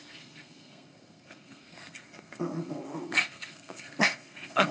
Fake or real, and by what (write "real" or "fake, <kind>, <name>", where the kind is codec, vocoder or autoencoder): fake, codec, SNAC